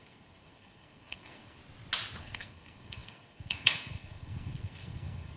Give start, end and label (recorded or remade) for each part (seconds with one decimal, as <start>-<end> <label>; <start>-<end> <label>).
0.0-1.6 remade; 1.6-2.2 recorded; 2.2-5.4 remade